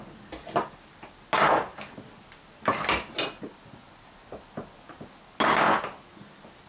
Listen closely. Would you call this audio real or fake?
real